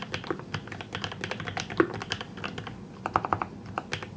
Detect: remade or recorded recorded